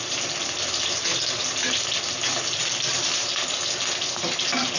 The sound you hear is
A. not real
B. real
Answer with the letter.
B